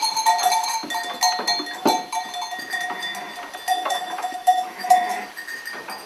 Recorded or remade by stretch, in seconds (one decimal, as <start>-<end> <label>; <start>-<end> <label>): 0.0-3.7 recorded; 3.7-5.1 remade; 5.1-6.1 recorded